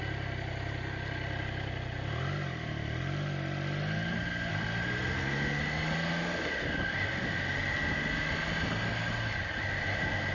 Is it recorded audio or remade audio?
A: recorded